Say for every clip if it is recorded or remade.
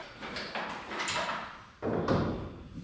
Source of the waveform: recorded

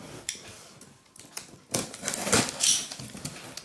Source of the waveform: remade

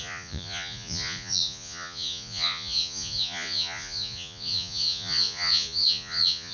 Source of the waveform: remade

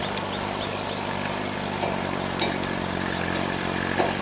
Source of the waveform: recorded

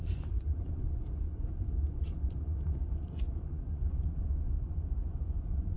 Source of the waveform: remade